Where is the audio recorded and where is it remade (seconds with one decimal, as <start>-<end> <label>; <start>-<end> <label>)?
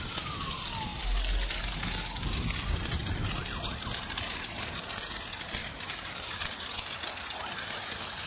0.0-5.6 recorded; 5.6-6.5 remade; 6.5-8.3 recorded